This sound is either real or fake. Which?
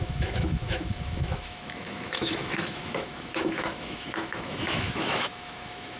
fake